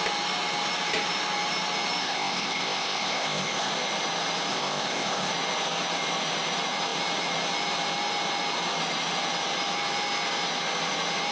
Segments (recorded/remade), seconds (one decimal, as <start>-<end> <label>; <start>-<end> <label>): 0.0-2.0 recorded; 2.0-3.7 remade; 3.7-4.5 recorded; 4.5-5.3 remade; 5.3-11.3 recorded